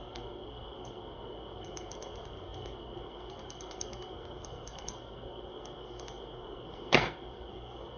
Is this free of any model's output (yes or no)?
no